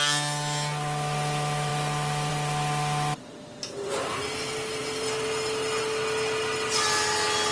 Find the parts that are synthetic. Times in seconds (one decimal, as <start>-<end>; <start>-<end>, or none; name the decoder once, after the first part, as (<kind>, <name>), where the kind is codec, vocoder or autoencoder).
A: none